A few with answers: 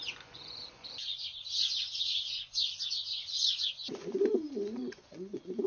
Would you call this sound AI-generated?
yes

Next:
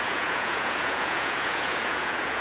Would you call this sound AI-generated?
yes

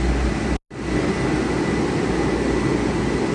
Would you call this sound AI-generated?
no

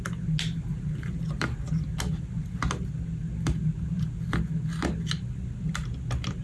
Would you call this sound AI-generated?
no